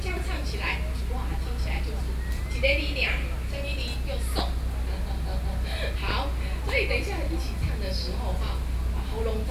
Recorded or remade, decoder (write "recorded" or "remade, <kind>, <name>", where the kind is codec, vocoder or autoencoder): recorded